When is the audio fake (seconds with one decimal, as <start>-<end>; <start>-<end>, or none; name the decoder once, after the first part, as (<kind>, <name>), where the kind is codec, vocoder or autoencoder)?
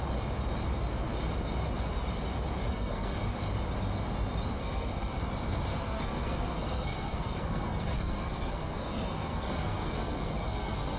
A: 2.7-3.2 (codec, SNAC); 4.6-5.2; 5.7-11.0